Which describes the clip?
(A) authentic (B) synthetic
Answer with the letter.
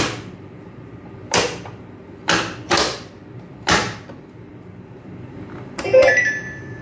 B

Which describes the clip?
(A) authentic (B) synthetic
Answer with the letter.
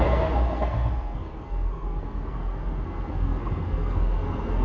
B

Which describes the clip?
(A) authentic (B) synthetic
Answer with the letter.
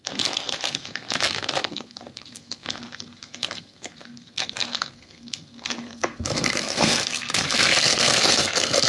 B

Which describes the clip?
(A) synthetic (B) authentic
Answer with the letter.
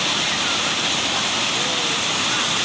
B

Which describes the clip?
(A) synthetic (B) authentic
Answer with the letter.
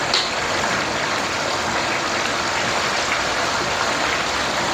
B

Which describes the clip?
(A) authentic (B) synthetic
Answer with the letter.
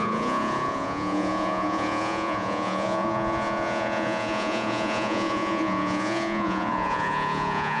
B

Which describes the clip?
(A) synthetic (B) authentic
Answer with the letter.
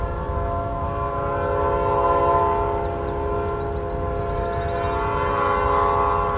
B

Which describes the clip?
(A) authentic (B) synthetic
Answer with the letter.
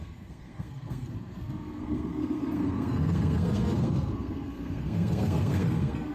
B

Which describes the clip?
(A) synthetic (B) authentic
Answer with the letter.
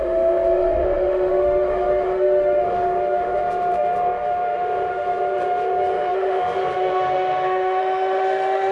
A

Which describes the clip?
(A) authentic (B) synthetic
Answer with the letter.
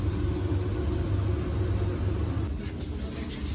A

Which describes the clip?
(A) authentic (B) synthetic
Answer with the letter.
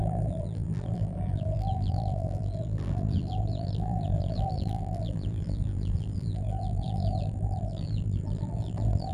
B